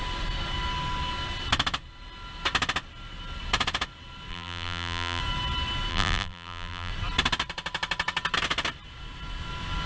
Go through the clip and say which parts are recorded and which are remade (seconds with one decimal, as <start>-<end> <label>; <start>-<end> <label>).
0.0-4.3 recorded; 4.3-5.2 remade; 5.2-5.9 recorded; 5.9-6.9 remade; 6.9-9.9 recorded